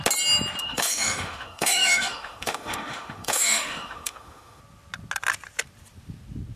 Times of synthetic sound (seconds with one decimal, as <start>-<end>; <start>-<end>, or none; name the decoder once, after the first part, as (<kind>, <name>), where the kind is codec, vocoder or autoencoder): 0.6-4.6 (autoencoder, DAC-VAE)